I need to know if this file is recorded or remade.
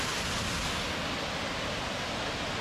recorded